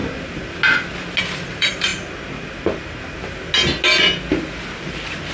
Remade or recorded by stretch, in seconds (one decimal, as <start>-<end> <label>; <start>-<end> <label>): 0.0-1.2 recorded; 1.2-1.9 remade; 1.9-5.3 recorded